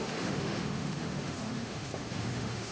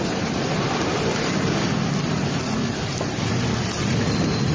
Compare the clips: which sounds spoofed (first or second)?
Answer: first